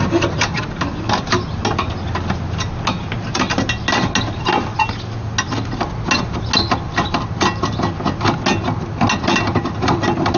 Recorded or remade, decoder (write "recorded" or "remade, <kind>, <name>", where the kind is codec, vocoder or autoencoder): recorded